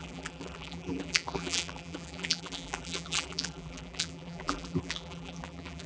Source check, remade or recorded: remade